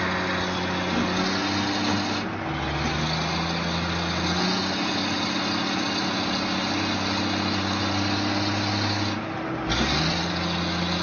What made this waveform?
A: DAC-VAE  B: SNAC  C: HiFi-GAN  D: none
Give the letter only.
D